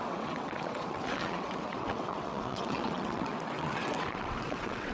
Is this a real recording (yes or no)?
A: no